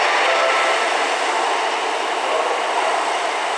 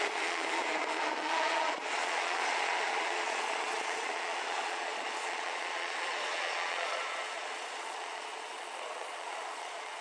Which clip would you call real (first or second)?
first